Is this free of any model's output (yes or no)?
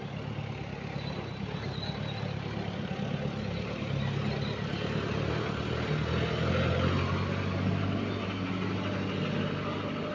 yes